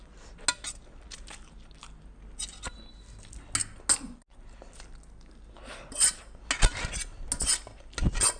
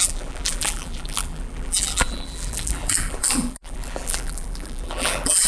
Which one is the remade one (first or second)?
second